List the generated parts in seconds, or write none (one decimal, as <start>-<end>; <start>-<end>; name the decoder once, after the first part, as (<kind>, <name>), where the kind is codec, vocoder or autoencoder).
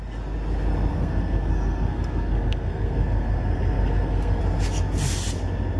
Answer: 0.9-4.4 (codec, SNAC)